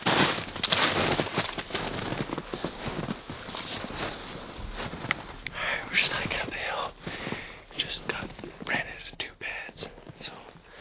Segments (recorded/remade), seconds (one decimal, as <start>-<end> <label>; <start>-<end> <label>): 0.0-10.8 recorded